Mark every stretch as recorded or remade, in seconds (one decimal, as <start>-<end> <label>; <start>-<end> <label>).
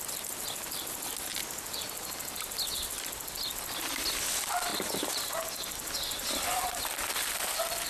0.0-7.9 recorded